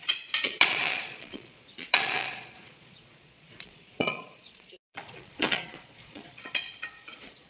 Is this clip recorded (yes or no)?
no